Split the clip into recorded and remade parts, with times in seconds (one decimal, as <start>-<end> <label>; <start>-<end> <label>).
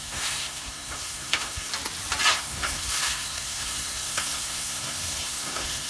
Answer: 0.0-1.7 remade; 1.7-2.3 recorded; 2.3-5.9 remade